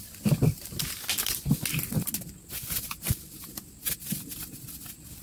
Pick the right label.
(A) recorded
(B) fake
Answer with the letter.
A